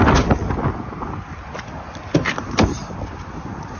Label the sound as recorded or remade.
recorded